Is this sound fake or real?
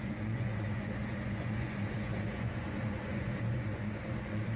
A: fake